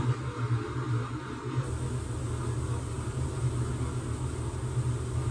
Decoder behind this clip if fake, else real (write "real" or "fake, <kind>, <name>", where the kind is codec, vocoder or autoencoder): real